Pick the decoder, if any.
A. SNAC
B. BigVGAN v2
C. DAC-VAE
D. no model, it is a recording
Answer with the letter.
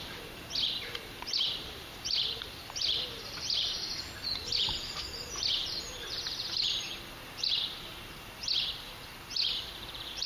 B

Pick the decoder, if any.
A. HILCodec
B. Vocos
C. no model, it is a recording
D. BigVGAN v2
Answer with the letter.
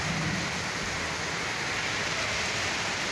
C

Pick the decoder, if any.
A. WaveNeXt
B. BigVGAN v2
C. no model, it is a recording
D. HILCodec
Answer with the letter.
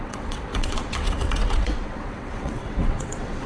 A